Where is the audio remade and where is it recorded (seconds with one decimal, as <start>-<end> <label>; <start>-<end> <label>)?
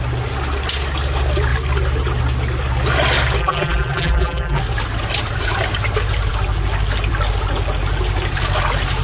0.0-3.4 recorded; 3.4-4.6 remade; 4.6-9.0 recorded